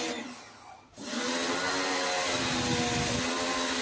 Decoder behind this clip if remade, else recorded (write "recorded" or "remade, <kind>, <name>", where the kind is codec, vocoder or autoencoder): recorded